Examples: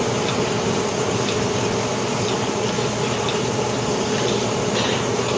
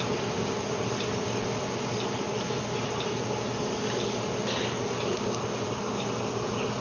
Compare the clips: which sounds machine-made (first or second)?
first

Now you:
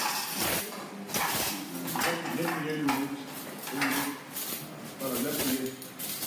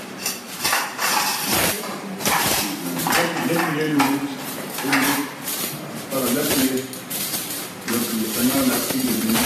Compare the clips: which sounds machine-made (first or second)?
second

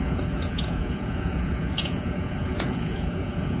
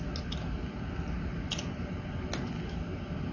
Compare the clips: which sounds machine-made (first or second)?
first